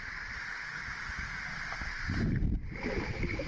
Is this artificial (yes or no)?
no